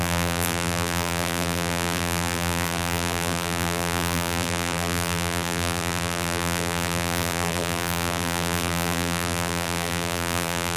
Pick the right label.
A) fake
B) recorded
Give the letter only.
A